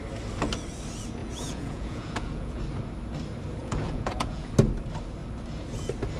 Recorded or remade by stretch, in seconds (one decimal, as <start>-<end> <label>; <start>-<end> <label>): 0.0-1.2 recorded; 1.2-2.6 remade; 2.6-3.6 recorded; 3.6-4.5 remade; 4.5-6.2 recorded